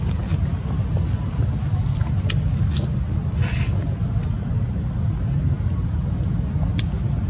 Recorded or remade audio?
recorded